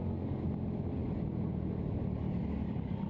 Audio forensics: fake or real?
real